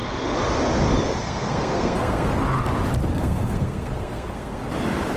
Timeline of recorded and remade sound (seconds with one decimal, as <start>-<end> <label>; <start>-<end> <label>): 0.0-1.2 recorded; 1.2-2.3 remade; 2.3-3.1 recorded; 3.1-4.6 remade; 4.6-5.2 recorded